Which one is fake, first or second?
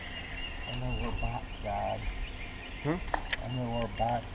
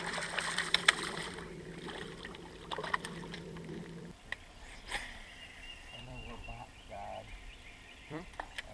second